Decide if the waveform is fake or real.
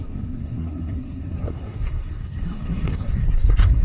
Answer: fake